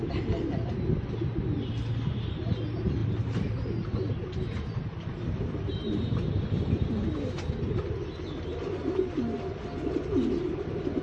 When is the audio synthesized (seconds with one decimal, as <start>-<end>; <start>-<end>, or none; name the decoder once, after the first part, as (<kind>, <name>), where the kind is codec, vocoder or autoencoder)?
3.0-7.5 (vocoder, BigVGAN v2)